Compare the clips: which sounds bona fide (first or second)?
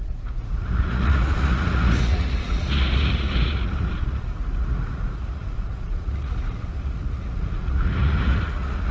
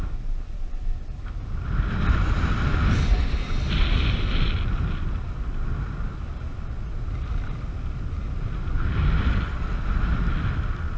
second